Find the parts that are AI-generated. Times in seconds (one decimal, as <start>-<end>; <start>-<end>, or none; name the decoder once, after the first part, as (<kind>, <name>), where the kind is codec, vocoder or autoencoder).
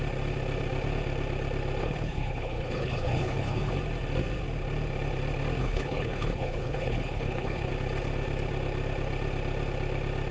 1.8-3.7 (codec, HILCodec); 5.6-7.7